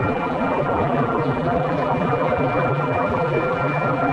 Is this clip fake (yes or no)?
yes